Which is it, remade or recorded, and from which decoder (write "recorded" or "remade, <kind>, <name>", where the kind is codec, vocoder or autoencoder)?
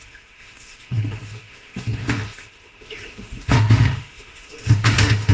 remade, autoencoder, DAC-VAE